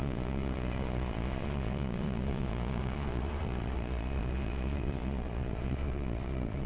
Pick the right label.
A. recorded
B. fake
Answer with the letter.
B